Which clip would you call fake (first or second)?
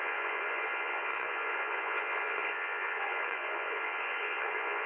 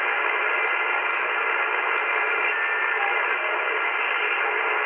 first